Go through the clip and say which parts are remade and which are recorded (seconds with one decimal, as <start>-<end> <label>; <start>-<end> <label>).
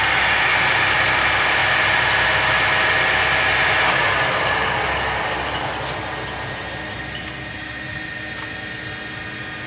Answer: 0.0-9.7 recorded